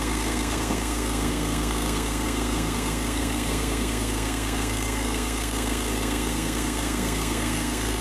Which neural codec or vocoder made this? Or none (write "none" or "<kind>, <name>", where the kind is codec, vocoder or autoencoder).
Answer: codec, SNAC